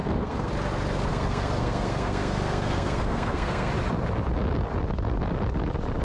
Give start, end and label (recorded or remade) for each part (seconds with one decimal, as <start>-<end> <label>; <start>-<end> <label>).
0.0-0.5 remade; 0.5-1.1 recorded; 1.1-3.7 remade; 3.7-6.0 recorded